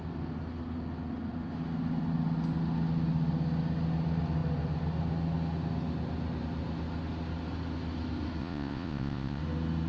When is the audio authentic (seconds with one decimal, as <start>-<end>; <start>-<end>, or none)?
0.0-8.4; 9.4-9.9